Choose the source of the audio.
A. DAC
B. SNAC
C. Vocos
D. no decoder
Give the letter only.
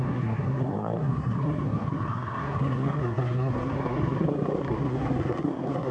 B